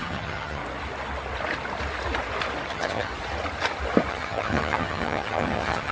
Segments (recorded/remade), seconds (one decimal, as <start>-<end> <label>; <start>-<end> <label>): 0.0-0.6 remade; 0.6-2.7 recorded; 2.7-3.1 remade; 3.1-4.1 recorded; 4.1-5.9 remade